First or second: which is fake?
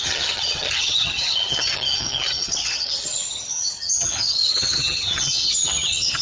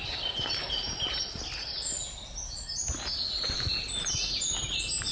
first